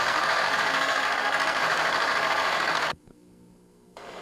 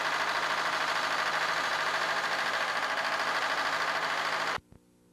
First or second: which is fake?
first